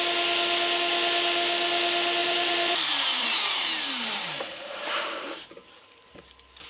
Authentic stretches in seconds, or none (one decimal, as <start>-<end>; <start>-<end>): 0.0-2.2; 6.2-6.7